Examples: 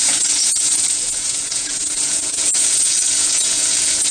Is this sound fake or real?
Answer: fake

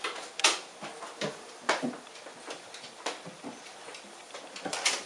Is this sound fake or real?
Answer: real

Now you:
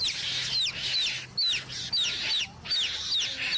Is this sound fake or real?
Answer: real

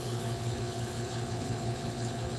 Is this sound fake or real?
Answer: fake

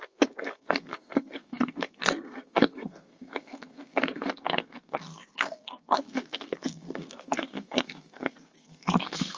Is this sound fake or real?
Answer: fake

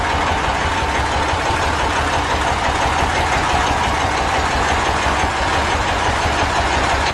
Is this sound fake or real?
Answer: fake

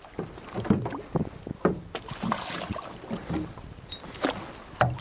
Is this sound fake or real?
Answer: real